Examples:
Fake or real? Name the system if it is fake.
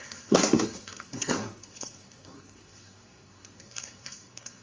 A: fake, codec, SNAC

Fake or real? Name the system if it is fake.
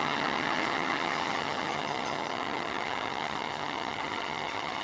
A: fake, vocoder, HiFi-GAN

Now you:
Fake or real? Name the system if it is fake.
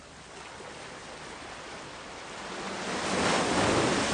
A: real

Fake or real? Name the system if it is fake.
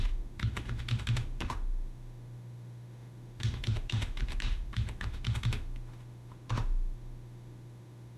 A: fake, autoencoder, DAC-VAE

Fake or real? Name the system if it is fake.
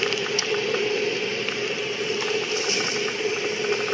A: real